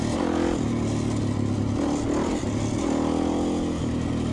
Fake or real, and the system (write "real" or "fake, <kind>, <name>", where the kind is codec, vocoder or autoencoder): real